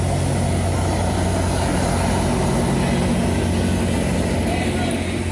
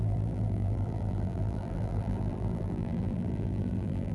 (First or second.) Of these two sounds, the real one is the first